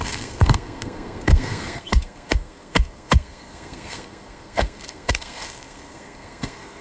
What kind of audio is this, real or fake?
fake